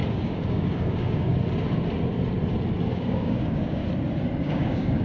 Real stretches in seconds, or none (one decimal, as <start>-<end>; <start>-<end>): 1.3-2.9; 3.8-4.4